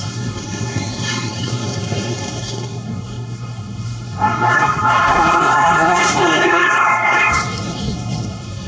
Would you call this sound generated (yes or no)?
yes